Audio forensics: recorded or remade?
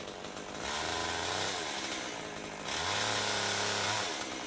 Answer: recorded